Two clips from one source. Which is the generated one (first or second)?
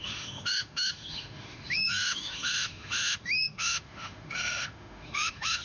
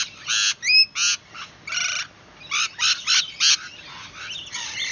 first